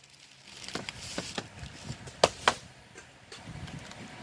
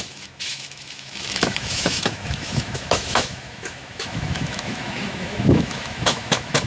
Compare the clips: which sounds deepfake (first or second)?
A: second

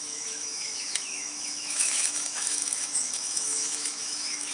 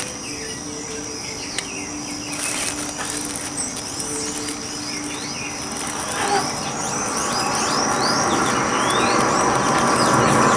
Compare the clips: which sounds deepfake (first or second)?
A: first